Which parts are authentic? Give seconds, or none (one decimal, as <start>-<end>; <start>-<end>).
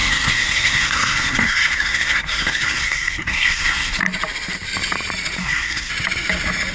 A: 4.0-5.4; 5.9-6.7